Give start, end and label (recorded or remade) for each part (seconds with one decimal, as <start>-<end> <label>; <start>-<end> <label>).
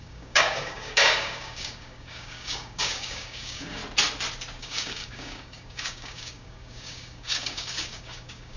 0.0-3.8 remade; 3.8-4.6 recorded; 4.6-8.6 remade